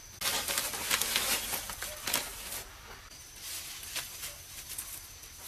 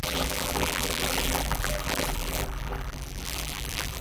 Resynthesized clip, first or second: second